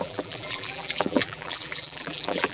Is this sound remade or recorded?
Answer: remade